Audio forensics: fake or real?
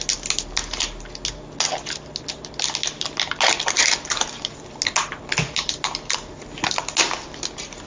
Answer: real